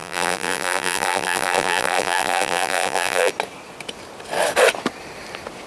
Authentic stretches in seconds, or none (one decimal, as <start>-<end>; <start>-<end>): 3.3-5.7